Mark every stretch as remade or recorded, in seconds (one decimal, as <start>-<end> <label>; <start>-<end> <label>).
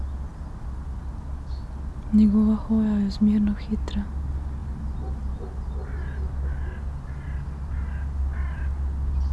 0.0-9.3 recorded